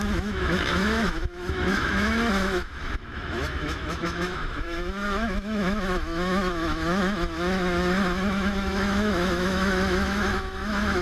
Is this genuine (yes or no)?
no